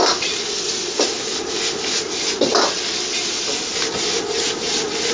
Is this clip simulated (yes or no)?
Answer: no